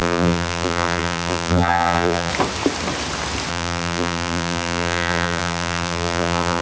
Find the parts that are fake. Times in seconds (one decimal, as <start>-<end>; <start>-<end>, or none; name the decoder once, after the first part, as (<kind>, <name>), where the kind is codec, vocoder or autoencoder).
0.0-2.3 (vocoder, BigVGAN v2); 3.5-6.6